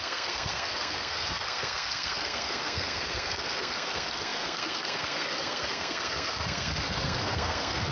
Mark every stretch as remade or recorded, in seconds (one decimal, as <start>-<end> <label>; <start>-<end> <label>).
0.0-7.9 remade